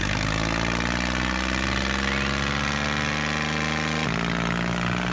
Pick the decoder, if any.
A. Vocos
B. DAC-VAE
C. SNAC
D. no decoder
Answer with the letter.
D